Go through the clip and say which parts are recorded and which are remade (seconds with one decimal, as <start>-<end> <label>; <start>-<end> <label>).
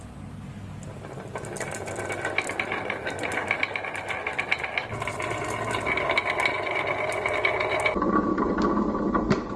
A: 0.0-9.6 recorded